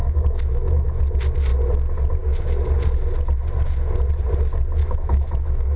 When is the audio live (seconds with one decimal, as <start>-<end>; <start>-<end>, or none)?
1.0-4.8